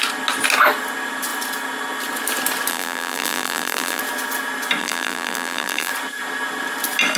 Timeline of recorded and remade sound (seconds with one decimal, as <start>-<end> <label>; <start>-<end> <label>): 0.0-2.7 recorded; 2.7-4.0 remade; 4.0-4.8 recorded; 4.8-5.9 remade; 5.9-7.2 recorded